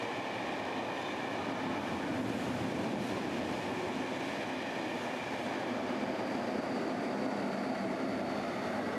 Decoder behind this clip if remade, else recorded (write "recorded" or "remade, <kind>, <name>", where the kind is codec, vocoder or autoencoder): recorded